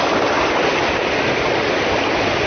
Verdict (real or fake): real